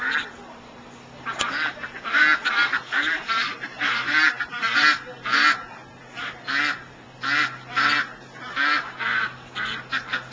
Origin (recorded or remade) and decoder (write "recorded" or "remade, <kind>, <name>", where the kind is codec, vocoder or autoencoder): recorded